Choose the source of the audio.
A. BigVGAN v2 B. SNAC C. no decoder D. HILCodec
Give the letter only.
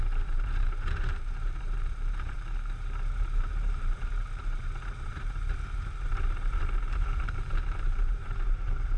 A